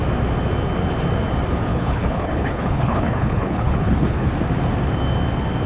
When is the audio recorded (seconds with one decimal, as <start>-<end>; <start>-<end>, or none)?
0.0-1.7; 4.3-5.7